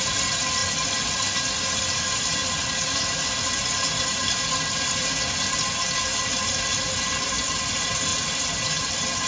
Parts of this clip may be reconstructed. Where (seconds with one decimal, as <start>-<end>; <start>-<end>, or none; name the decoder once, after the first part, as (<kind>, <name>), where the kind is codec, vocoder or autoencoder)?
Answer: none